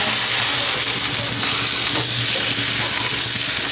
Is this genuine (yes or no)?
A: yes